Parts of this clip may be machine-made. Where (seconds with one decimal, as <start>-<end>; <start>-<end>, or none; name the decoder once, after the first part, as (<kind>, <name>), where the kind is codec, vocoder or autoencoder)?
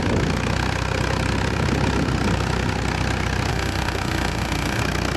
3.5-4.8 (autoencoder, DAC-VAE)